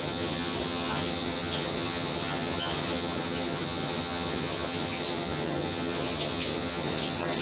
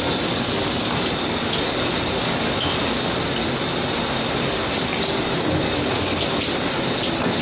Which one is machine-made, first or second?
first